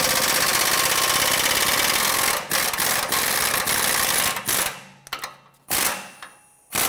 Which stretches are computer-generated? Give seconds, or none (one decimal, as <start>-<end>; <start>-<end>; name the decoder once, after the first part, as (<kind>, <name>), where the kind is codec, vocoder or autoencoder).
none